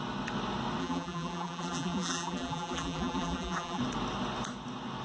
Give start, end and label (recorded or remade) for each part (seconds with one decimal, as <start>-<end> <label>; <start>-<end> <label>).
0.0-0.8 recorded; 0.8-3.8 remade; 3.8-5.0 recorded